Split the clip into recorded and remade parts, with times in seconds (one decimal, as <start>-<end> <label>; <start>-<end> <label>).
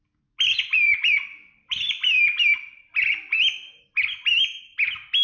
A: 0.0-0.6 recorded; 0.6-3.7 remade; 3.7-5.2 recorded